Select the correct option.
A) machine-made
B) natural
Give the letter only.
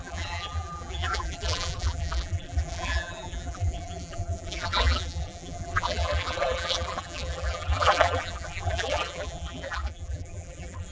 A